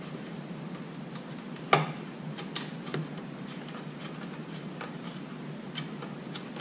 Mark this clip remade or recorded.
recorded